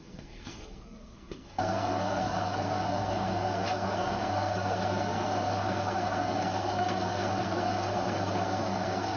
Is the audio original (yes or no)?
no